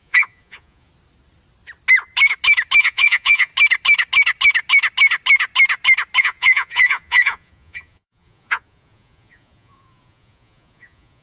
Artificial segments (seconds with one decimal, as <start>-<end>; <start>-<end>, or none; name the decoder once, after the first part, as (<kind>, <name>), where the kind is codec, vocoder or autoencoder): 0.0-0.9 (vocoder, Vocos); 2.8-3.5; 6.2-11.2